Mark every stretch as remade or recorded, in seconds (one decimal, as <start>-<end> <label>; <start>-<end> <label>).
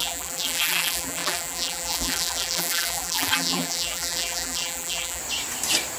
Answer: 0.0-5.2 remade; 5.2-6.0 recorded